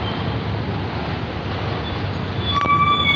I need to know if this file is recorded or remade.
recorded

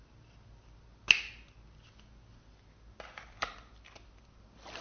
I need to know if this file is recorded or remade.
recorded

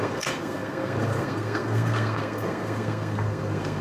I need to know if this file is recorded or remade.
remade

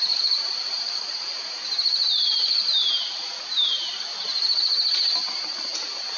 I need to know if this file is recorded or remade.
remade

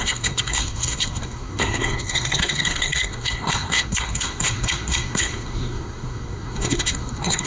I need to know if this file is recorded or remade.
remade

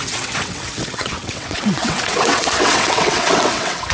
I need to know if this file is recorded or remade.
remade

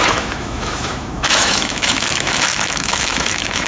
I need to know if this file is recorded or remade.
remade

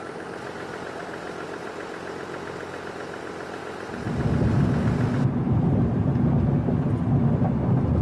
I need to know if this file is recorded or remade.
recorded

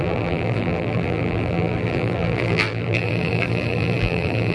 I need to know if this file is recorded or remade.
remade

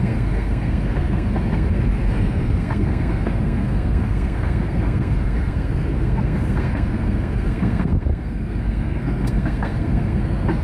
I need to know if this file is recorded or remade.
remade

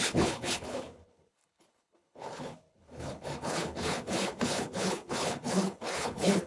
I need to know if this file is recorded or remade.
remade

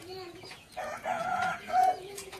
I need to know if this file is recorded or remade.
remade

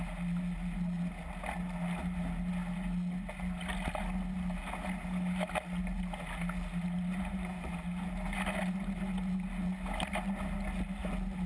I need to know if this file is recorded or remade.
recorded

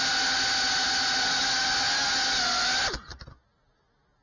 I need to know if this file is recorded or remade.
recorded